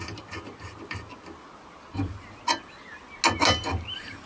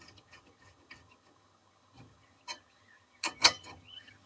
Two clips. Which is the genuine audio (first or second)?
first